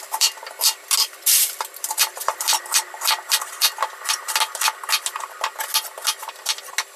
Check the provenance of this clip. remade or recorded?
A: recorded